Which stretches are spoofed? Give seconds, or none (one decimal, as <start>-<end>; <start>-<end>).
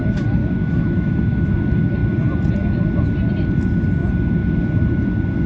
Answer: 0.4-1.5